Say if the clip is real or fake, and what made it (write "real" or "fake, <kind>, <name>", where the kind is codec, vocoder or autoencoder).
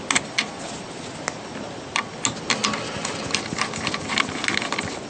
real